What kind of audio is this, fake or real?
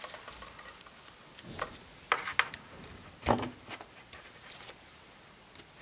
real